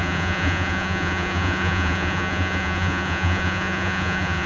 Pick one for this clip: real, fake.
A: fake